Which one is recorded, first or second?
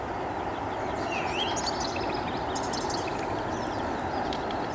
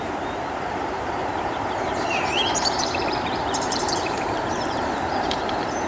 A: first